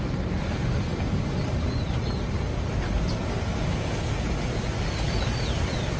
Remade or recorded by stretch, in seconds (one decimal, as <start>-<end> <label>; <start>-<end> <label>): 0.0-6.0 recorded